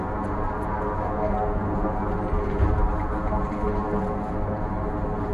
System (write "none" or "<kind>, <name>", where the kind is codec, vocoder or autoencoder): none